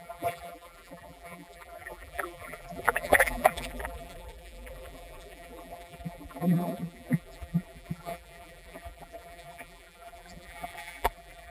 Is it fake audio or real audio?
fake